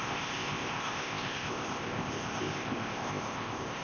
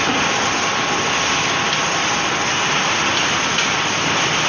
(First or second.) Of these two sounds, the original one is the second